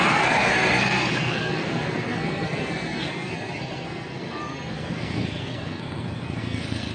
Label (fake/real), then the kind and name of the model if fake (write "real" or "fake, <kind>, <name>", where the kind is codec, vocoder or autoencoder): fake, codec, SNAC